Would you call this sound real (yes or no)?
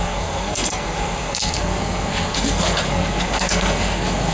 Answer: no